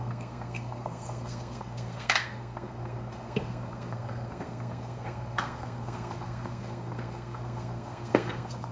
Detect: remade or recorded remade